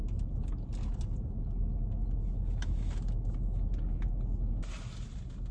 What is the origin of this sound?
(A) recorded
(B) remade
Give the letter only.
A